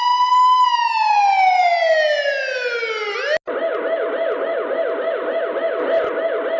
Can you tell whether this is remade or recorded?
recorded